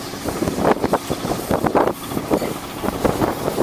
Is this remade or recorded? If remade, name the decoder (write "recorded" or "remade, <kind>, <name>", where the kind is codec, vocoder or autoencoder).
remade, vocoder, BigVGAN v2